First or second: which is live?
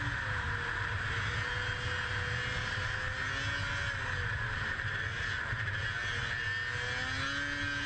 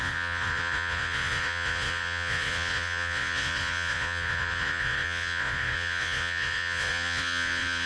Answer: first